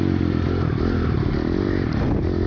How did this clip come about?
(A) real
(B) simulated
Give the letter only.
A